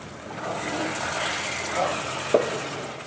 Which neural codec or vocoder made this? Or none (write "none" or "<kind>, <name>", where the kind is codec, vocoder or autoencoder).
none